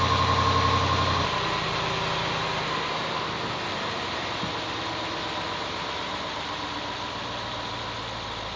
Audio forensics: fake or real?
real